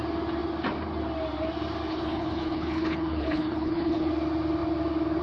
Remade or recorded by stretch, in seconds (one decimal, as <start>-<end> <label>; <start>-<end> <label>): 0.0-1.9 recorded; 1.9-4.1 remade; 4.1-5.2 recorded